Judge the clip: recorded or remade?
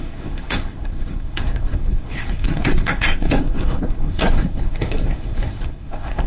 remade